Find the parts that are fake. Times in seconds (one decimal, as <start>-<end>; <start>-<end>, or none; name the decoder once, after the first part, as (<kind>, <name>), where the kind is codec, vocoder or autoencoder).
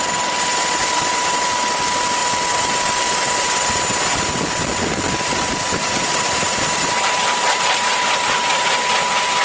0.8-1.3 (vocoder, BigVGAN v2); 5.7-8.7